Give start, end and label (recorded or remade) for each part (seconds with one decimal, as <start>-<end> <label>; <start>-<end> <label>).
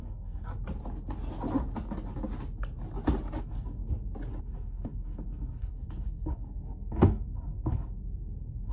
0.0-0.5 remade; 0.5-3.4 recorded; 3.4-3.8 remade; 3.8-4.4 recorded; 4.4-8.7 remade